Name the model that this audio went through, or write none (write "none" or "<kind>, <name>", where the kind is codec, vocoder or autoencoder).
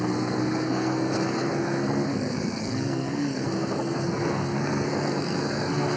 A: codec, SNAC